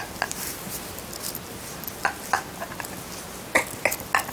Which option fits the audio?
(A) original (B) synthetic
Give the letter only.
A